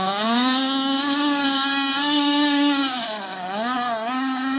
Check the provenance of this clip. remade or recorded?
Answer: remade